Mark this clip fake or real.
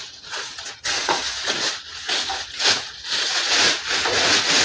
fake